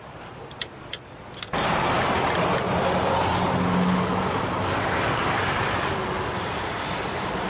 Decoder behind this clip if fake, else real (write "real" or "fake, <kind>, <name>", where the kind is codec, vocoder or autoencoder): real